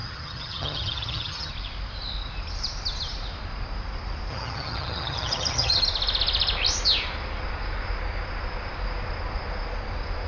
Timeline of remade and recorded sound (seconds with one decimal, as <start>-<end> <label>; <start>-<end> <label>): 0.0-1.5 remade; 1.5-4.3 recorded; 4.3-5.8 remade; 5.8-10.3 recorded